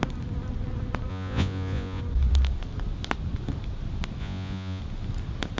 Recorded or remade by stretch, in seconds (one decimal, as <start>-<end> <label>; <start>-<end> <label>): 0.0-1.1 recorded; 1.1-2.0 remade; 2.0-4.2 recorded; 4.2-4.8 remade; 4.8-5.6 recorded